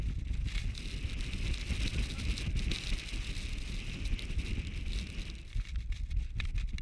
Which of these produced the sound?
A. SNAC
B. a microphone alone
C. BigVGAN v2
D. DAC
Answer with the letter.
B